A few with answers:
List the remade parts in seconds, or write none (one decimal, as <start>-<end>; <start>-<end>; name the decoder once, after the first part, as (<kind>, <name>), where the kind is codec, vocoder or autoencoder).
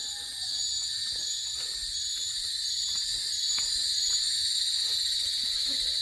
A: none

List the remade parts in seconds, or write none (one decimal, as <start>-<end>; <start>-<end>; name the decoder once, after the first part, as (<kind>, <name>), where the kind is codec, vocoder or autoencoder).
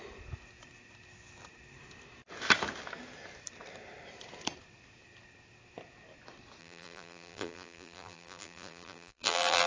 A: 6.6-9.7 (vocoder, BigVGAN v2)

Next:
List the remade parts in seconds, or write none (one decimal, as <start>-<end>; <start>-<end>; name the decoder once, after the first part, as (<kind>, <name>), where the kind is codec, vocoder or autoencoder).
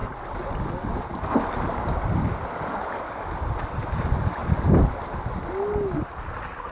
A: none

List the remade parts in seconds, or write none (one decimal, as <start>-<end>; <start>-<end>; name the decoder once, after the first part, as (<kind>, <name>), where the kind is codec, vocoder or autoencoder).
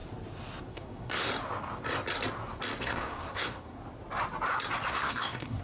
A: 0.6-1.3 (codec, SNAC); 2.8-3.8; 4.9-5.6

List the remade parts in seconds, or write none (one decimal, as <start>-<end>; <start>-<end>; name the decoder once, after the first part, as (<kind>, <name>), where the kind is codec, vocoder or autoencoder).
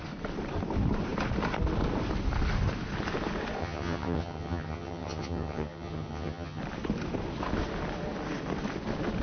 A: 3.6-6.6 (vocoder, HiFi-GAN)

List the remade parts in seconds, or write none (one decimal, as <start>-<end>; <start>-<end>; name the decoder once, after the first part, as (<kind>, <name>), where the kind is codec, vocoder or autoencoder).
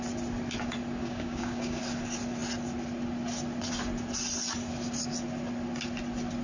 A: 1.0-1.8 (codec, DAC)